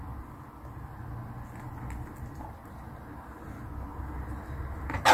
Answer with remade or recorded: recorded